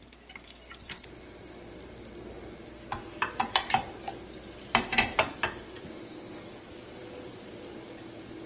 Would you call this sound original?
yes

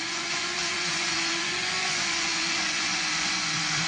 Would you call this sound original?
no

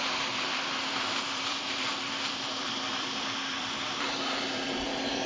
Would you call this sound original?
no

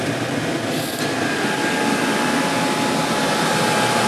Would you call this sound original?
yes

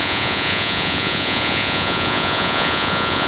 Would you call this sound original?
no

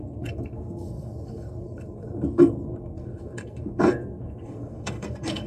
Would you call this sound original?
no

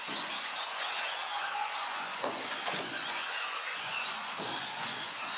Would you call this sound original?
no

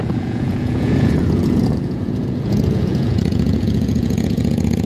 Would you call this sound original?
no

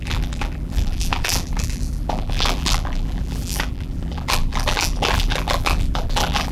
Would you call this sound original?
no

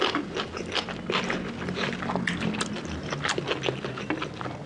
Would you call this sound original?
yes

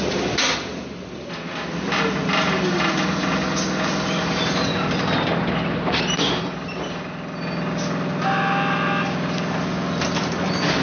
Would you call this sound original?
yes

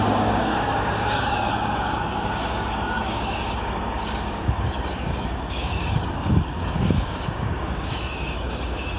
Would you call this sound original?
no